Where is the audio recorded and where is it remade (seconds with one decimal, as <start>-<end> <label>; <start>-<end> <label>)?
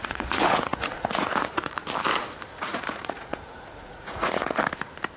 0.0-1.8 remade; 1.8-2.5 recorded; 2.5-4.6 remade; 4.6-5.2 recorded